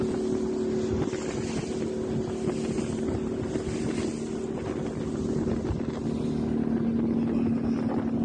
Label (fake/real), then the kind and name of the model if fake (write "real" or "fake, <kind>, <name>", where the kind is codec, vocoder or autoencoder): real